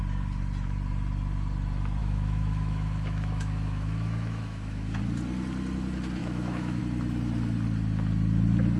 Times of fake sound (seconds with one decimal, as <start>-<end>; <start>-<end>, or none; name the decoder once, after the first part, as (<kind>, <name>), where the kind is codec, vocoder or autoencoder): 2.0-5.0 (autoencoder, DAC-VAE); 6.2-6.8